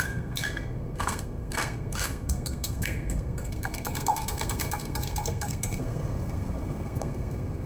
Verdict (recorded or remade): remade